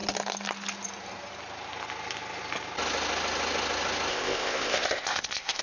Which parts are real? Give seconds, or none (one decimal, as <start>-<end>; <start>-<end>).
0.0-4.1